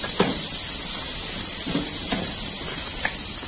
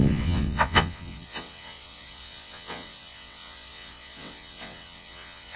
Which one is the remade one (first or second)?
second